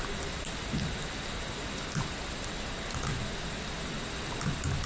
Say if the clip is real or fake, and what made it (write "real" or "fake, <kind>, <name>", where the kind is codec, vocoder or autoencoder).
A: real